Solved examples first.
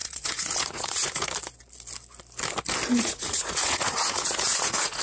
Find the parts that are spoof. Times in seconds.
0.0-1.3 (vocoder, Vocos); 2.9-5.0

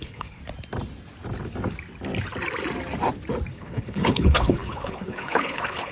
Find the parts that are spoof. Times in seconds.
0.0-0.4 (codec, HILCodec); 3.5-5.9

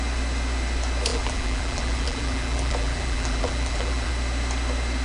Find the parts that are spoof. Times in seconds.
1.1-4.1 (vocoder, BigVGAN v2)

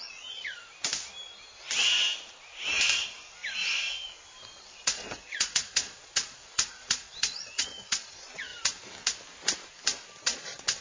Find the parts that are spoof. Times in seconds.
0.0-0.6 (vocoder, Vocos); 4.6-8.5; 10.2-10.8

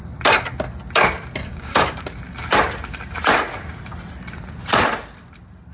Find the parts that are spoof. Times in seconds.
1.4-2.0 (codec, DAC)